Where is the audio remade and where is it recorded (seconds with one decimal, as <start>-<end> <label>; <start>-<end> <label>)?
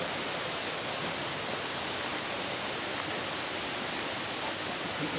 0.0-5.2 recorded